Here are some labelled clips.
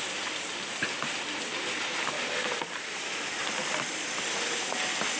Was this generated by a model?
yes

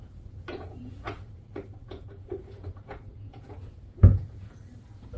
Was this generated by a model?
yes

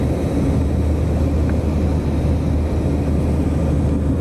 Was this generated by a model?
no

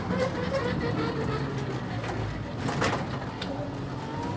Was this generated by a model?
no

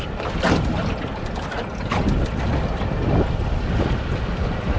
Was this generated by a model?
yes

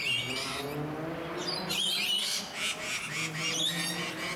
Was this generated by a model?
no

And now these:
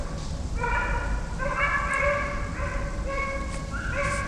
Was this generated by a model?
no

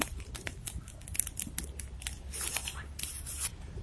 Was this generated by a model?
no